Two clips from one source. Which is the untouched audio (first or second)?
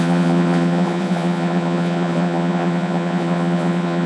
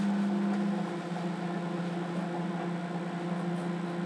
second